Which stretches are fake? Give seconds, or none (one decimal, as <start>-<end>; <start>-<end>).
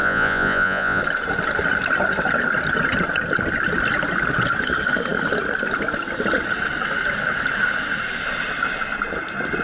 0.0-1.0